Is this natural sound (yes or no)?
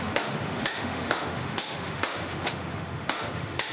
no